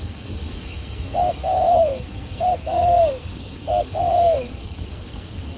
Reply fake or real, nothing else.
fake